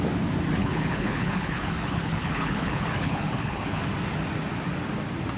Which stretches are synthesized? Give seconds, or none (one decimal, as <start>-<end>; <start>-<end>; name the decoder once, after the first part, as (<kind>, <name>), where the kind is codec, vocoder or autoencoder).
0.6-3.8 (codec, HILCodec)